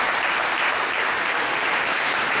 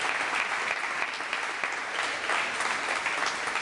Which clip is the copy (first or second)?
first